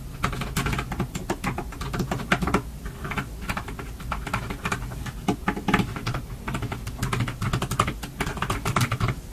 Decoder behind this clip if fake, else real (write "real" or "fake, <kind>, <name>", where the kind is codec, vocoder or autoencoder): real